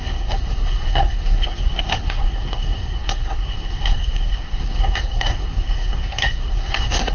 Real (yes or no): no